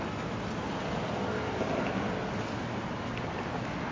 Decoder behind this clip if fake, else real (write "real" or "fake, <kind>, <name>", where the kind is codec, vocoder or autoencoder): real